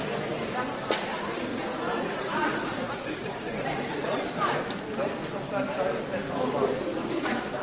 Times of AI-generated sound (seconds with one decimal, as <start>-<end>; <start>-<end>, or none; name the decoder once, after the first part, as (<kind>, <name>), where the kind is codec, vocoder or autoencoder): 1.5-4.2 (vocoder, Vocos); 7.0-7.6